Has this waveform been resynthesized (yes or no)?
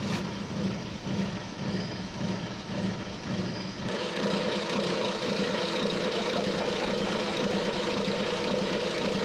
yes